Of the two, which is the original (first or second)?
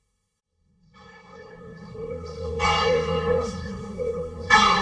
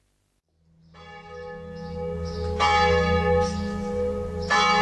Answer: second